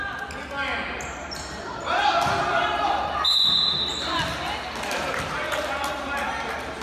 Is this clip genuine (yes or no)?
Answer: yes